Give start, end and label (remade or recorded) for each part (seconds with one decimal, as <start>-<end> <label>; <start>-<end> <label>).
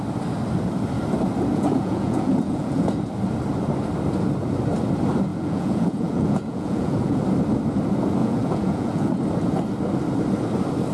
0.0-1.5 recorded; 1.5-2.9 remade; 2.9-5.3 recorded; 5.3-7.2 remade; 7.2-8.2 recorded; 8.2-9.1 remade; 9.1-10.9 recorded